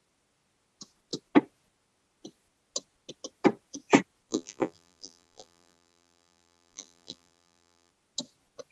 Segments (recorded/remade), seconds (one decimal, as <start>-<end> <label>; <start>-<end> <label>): 0.0-4.3 recorded; 4.3-7.9 remade; 7.9-8.7 recorded